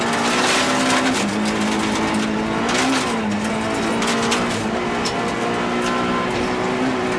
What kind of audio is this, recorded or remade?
recorded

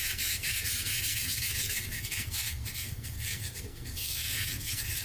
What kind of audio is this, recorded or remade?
remade